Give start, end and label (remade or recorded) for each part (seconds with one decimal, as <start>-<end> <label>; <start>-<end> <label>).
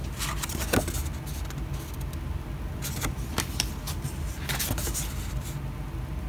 0.0-6.3 recorded